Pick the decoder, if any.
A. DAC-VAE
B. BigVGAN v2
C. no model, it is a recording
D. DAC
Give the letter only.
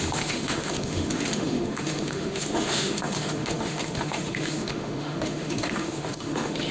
A